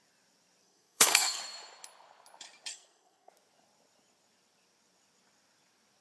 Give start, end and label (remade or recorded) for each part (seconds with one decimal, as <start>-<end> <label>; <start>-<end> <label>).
0.0-0.6 recorded; 0.6-1.4 remade; 1.4-2.7 recorded; 2.7-3.3 remade; 3.3-6.0 recorded